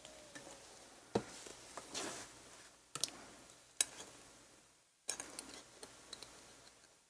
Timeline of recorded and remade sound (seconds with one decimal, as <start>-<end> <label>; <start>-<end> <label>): 0.0-7.1 recorded